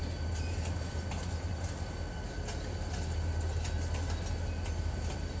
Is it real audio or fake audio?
real